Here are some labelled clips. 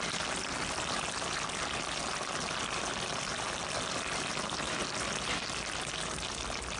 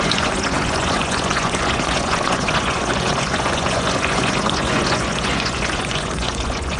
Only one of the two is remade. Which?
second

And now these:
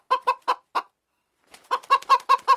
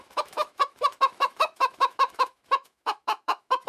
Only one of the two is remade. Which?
second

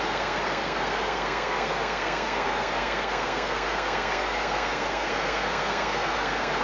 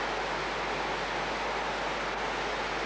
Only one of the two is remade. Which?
first